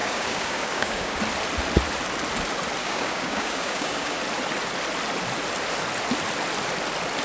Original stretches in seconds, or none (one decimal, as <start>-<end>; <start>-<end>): 1.2-2.8; 4.2-7.2

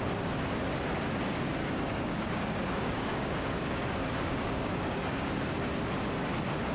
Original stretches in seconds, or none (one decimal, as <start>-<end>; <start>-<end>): 0.0-1.6; 5.6-6.7

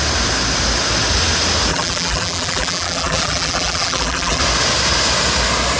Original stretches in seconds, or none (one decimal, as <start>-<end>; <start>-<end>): 0.0-1.7; 4.4-5.8

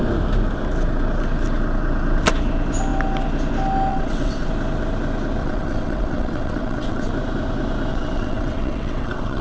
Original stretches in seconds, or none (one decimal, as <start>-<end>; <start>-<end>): 0.0-3.9; 4.5-5.4; 7.1-7.9

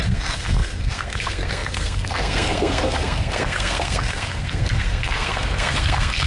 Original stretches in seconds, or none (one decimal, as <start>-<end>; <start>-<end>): none

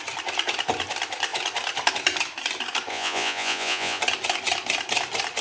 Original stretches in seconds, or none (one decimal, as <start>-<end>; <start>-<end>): 0.0-2.9; 4.0-5.4

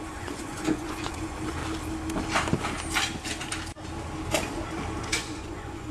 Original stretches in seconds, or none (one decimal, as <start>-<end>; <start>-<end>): 1.6-5.1